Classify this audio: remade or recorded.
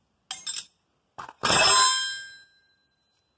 recorded